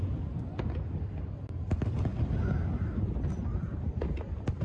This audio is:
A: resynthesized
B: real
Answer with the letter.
B